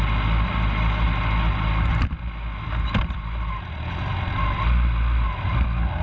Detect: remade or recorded recorded